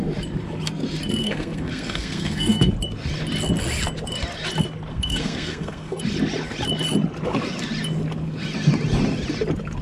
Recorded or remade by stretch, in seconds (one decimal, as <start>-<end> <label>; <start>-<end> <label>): 0.0-1.2 recorded; 1.2-2.7 remade; 2.7-4.9 recorded; 4.9-6.0 remade; 6.0-9.8 recorded